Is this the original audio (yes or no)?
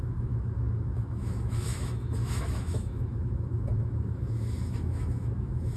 no